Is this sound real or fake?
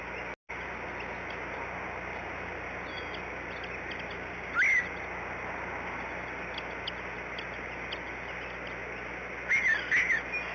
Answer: real